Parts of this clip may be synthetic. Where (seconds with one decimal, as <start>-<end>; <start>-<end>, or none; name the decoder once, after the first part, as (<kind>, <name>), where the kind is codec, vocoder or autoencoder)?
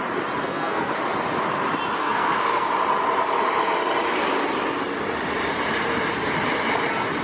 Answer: 0.4-0.9 (codec, SNAC); 2.0-2.7